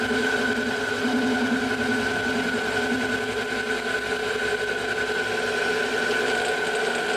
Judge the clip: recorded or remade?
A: recorded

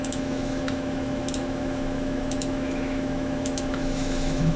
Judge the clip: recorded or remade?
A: remade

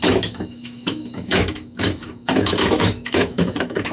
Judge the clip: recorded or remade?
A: remade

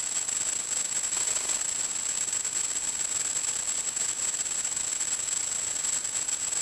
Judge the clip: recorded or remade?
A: recorded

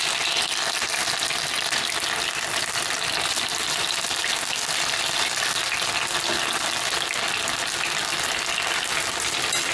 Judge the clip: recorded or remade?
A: recorded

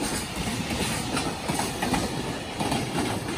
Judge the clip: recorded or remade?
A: recorded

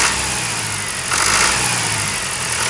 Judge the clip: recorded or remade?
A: recorded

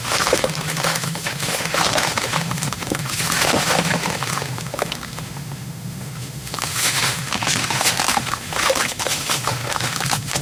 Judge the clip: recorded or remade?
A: remade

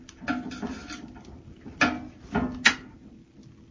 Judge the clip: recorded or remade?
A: recorded